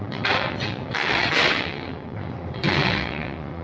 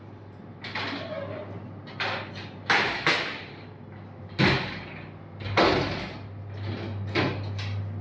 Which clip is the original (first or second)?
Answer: second